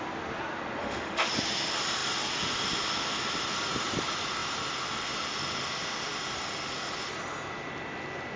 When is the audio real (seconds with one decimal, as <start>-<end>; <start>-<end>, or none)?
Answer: 0.0-0.8; 1.3-8.4